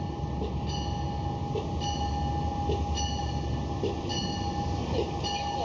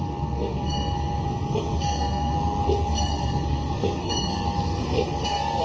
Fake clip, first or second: second